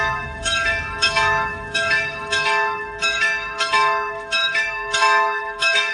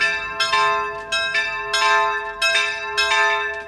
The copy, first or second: first